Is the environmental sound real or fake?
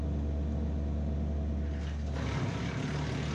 real